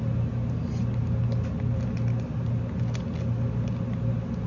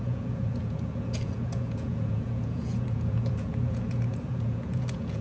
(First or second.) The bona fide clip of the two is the first